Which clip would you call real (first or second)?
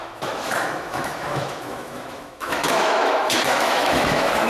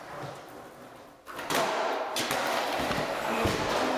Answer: second